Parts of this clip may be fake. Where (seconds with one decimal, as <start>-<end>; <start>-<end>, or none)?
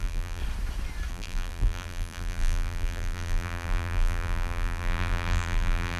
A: 0.0-0.4; 1.1-6.0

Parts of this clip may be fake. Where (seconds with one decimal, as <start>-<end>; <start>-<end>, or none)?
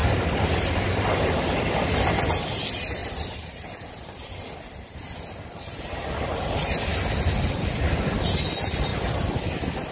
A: 3.0-3.9; 8.9-9.4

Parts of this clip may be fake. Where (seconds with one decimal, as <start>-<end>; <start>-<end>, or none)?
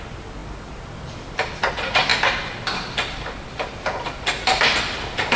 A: none